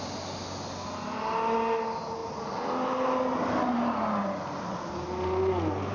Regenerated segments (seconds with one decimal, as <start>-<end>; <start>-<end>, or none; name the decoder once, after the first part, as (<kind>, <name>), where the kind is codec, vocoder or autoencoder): none